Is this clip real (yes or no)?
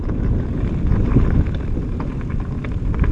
yes